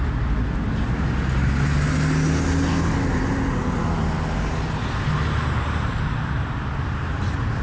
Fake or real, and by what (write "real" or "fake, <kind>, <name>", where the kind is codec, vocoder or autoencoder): real